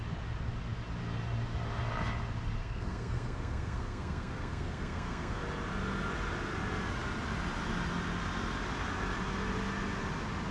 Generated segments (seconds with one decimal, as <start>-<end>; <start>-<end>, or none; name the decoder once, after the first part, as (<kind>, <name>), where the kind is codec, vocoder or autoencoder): 2.6-5.4 (codec, SNAC)